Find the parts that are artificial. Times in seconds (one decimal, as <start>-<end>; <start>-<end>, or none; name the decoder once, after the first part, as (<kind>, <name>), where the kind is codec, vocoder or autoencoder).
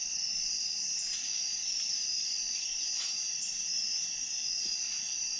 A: 0.0-5.4 (vocoder, BigVGAN v2)